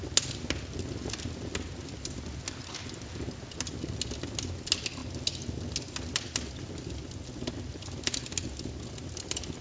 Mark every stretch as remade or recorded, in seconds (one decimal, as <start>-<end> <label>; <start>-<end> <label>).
0.0-9.6 recorded